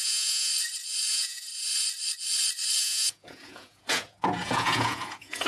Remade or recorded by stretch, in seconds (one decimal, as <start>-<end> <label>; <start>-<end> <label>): 0.0-0.5 remade; 0.5-1.1 recorded; 1.1-1.5 remade; 1.5-2.8 recorded; 2.8-5.5 remade